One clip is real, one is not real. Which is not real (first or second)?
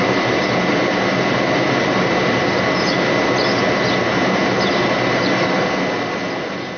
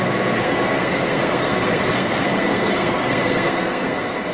second